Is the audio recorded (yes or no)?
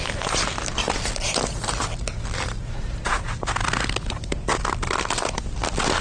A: yes